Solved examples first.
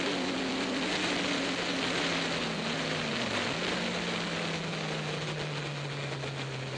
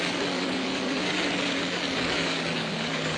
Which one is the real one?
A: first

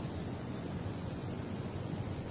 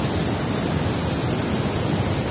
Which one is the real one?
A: second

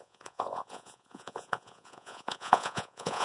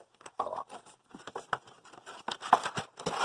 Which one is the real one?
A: second